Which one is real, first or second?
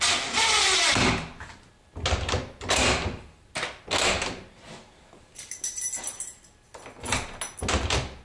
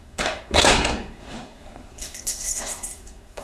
first